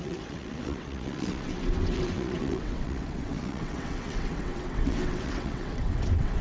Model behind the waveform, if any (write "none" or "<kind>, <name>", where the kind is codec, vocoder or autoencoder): vocoder, WaveNeXt